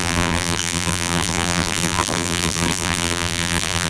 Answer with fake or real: fake